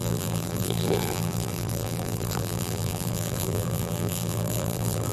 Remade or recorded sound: remade